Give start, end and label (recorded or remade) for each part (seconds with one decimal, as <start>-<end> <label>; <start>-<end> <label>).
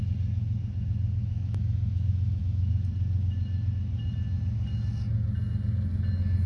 0.0-1.2 recorded; 1.2-2.7 remade; 2.7-6.5 recorded